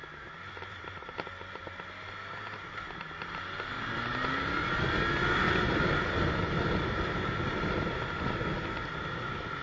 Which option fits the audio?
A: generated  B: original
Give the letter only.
B